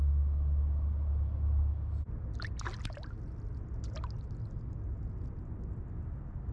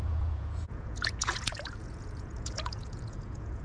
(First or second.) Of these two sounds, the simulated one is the second